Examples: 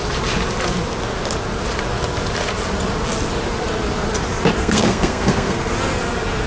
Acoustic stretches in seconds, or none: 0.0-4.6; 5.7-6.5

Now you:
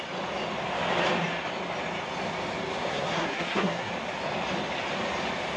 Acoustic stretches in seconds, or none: 0.0-2.9; 3.9-5.6

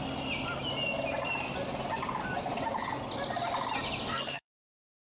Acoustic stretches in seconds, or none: 0.0-4.1